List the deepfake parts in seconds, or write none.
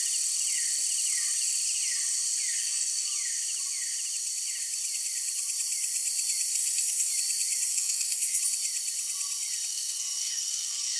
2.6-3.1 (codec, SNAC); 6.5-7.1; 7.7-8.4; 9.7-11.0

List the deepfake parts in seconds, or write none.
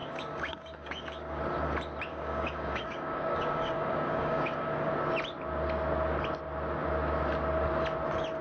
0.0-1.4 (codec, DAC); 2.1-4.9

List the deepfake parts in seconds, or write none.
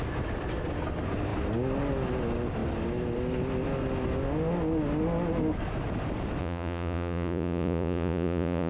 6.4-8.7 (vocoder, Vocos)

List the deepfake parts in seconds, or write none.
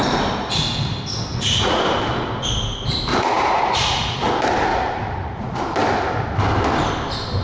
1.3-1.8 (vocoder, Vocos); 3.1-4.3; 4.7-5.6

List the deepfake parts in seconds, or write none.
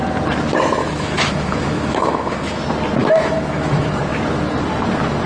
0.8-2.6 (autoencoder, DAC-VAE); 3.0-4.0